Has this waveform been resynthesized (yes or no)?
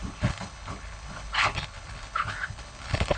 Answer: yes